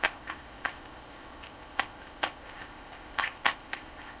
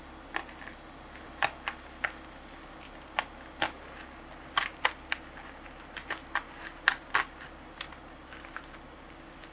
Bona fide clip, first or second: second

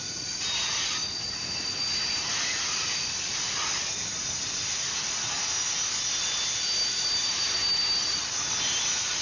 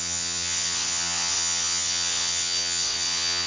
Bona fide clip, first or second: first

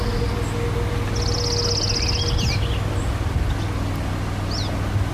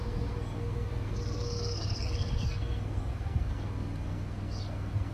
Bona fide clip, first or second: first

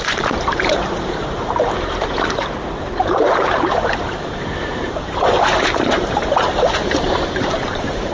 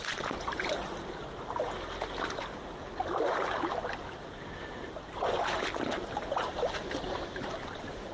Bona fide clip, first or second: second